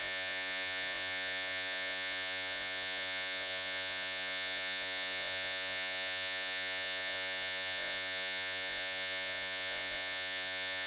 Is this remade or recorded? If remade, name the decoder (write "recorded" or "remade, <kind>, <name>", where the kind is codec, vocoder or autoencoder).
remade, vocoder, Vocos